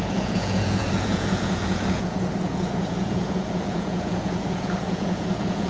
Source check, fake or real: fake